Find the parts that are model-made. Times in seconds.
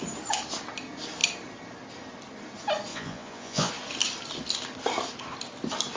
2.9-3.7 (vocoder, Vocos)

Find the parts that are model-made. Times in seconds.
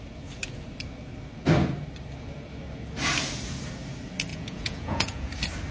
4.3-5.3 (vocoder, Vocos)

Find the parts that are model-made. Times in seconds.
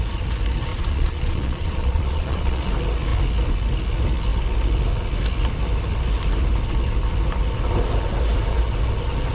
0.7-2.7 (vocoder, Vocos)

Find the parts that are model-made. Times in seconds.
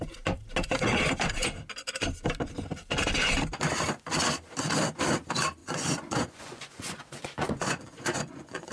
5.6-8.7 (vocoder, Vocos)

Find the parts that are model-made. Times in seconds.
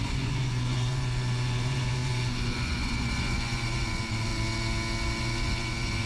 0.0-4.3 (vocoder, Vocos); 5.2-6.1